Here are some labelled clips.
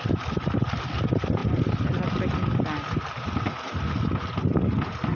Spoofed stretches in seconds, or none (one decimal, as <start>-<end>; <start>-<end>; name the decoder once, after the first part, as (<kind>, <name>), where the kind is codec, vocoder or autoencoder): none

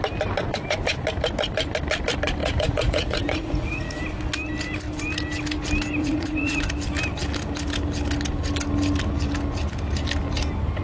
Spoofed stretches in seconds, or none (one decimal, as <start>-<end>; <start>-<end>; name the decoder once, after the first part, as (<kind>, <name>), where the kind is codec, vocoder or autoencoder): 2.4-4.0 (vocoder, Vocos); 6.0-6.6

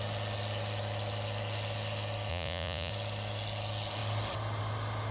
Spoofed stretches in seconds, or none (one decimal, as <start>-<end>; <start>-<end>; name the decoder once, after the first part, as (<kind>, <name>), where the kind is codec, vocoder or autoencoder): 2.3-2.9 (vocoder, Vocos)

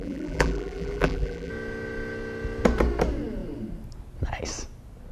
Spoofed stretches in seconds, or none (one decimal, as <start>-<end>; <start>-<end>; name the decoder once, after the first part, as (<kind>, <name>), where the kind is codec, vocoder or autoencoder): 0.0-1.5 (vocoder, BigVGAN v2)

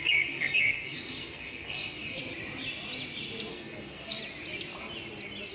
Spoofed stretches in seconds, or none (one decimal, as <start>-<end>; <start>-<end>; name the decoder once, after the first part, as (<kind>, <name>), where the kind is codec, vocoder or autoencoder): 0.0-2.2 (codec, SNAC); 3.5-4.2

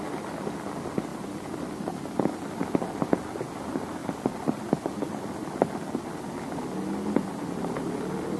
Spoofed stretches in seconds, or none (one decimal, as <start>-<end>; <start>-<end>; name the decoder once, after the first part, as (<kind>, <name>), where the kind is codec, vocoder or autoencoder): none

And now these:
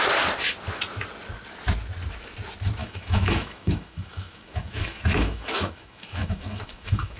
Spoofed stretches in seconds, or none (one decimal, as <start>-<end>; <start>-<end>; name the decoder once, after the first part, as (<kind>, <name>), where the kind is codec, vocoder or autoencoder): 2.8-7.2 (autoencoder, DAC-VAE)